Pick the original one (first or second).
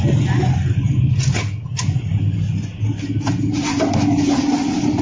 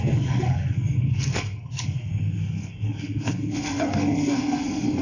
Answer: first